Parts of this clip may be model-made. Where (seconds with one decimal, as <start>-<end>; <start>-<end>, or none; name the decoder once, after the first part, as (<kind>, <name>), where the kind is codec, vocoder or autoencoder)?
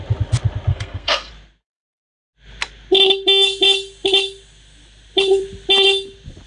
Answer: 0.7-1.3 (codec, SNAC)